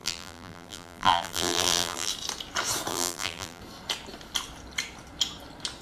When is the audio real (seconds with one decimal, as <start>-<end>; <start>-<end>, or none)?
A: 2.1-2.9; 3.6-5.8